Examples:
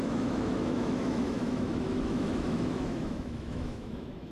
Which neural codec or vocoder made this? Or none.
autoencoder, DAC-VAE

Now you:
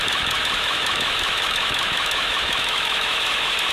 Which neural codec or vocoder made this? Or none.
autoencoder, DAC-VAE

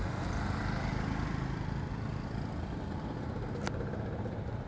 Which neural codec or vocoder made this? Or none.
none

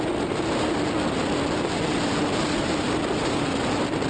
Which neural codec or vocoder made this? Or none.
none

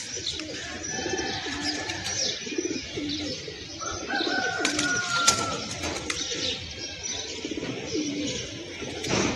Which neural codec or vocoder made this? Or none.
none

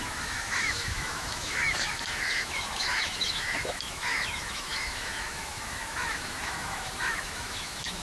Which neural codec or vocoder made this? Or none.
autoencoder, DAC-VAE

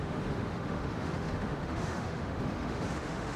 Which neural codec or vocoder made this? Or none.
autoencoder, DAC-VAE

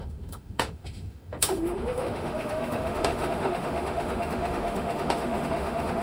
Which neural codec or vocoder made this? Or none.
autoencoder, DAC-VAE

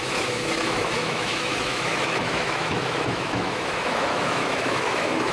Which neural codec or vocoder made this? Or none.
autoencoder, DAC-VAE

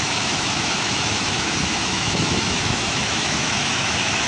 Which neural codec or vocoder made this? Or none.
autoencoder, DAC-VAE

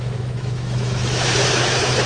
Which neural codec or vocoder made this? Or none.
autoencoder, DAC-VAE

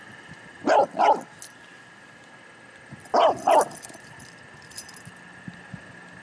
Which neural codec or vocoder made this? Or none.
none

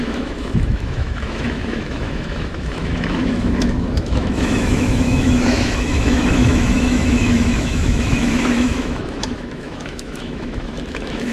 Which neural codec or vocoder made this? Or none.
autoencoder, DAC-VAE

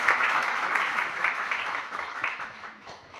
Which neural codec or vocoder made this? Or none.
autoencoder, DAC-VAE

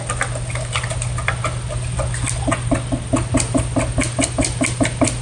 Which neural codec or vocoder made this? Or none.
none